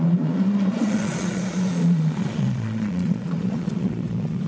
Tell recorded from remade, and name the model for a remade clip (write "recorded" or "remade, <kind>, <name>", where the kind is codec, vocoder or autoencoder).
remade, vocoder, Vocos